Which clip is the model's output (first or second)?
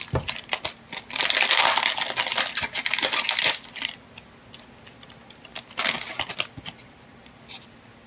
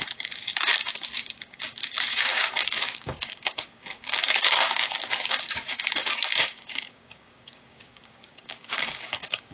second